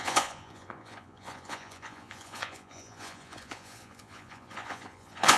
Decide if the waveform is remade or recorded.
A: remade